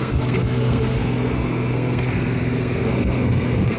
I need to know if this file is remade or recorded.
remade